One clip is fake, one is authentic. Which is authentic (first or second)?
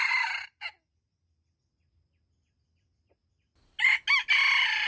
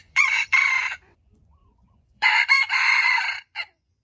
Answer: first